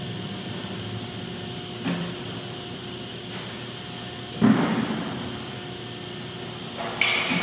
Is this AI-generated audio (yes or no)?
no